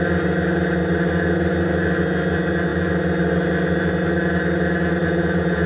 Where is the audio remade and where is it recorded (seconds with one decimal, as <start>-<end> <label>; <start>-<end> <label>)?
0.0-5.0 recorded; 5.0-5.7 remade